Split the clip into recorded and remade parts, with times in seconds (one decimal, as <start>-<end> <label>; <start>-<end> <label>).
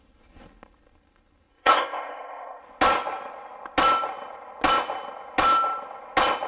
0.0-1.5 recorded; 1.5-2.6 remade; 2.6-6.5 recorded